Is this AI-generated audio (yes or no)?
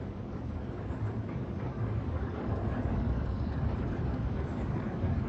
yes